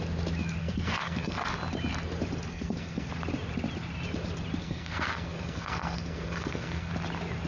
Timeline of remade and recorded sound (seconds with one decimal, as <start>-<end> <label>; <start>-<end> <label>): 0.0-0.6 recorded; 0.6-1.5 remade; 1.5-2.5 recorded; 2.5-3.1 remade; 3.1-4.6 recorded; 4.6-6.9 remade; 6.9-7.5 recorded